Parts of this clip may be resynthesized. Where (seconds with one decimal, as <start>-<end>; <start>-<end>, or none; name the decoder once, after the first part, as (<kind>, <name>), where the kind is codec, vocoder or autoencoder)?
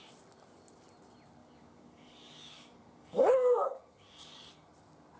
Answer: 1.4-4.5 (codec, DAC)